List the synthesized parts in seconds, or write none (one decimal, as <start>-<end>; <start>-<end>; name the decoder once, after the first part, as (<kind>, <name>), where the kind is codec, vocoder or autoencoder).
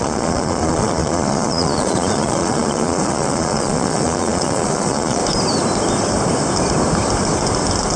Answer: 0.0-5.2 (vocoder, Vocos)